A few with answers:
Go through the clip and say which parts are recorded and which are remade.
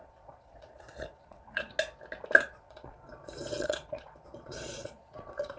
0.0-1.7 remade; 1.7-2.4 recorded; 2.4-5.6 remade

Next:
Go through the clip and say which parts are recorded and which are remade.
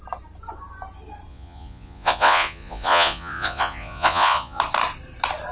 0.0-1.3 recorded; 1.3-4.6 remade; 4.6-5.5 recorded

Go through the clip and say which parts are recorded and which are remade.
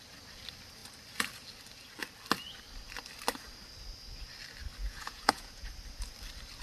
0.0-4.8 recorded; 4.8-5.7 remade; 5.7-6.6 recorded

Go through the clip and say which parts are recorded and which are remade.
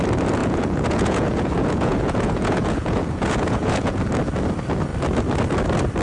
0.0-0.4 recorded; 0.4-4.0 remade; 4.0-6.0 recorded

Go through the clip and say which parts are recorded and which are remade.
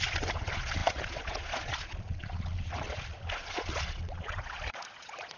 0.0-5.4 remade